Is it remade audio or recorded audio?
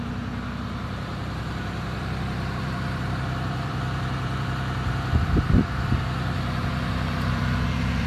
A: remade